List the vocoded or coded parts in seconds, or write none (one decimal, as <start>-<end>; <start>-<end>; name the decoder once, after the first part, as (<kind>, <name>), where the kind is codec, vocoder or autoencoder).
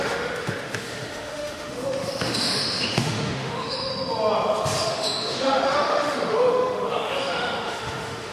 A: 0.0-3.9 (autoencoder, DAC-VAE); 4.9-8.3